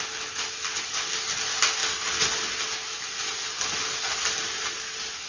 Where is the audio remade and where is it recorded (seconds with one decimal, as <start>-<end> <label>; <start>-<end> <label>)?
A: 0.0-5.3 recorded